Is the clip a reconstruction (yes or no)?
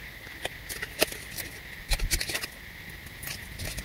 no